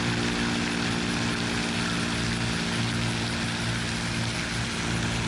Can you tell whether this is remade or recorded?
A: recorded